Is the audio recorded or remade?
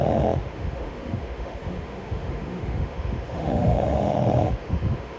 remade